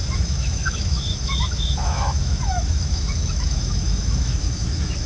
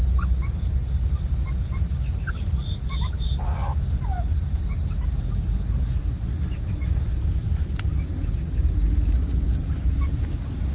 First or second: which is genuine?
second